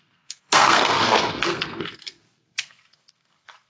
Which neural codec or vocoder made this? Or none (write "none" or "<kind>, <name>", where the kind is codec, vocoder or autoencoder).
codec, SNAC